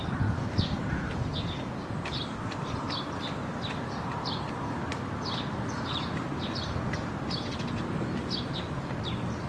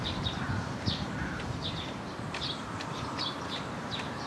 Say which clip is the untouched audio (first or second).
first